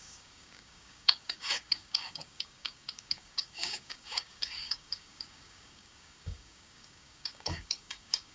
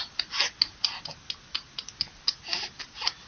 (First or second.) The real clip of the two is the second